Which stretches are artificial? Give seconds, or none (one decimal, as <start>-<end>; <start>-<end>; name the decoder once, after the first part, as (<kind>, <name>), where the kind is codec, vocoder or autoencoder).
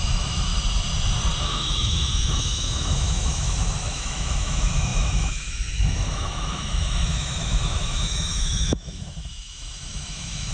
0.0-0.5 (autoencoder, DAC-VAE); 1.4-10.5